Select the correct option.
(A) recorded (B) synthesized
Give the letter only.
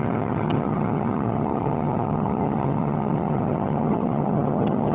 B